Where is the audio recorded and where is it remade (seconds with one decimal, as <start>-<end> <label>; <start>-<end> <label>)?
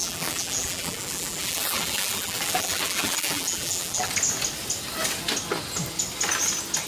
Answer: 0.0-4.1 remade; 4.1-6.9 recorded